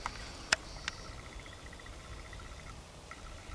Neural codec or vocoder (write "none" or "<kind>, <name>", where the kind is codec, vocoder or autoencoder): none